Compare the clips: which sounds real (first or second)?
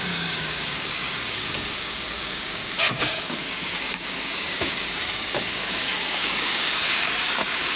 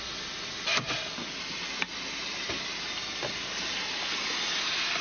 second